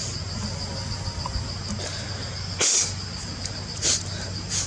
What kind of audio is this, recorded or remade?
recorded